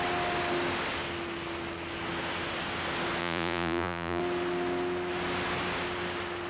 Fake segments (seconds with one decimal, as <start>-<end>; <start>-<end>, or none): 3.2-4.2